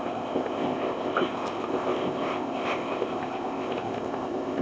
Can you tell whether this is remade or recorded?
remade